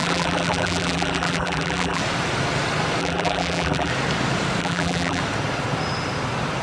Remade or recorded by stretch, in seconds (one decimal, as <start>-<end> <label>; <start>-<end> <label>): 0.0-2.0 remade; 2.0-3.0 recorded; 3.0-3.9 remade; 3.9-4.6 recorded; 4.6-5.2 remade; 5.2-6.6 recorded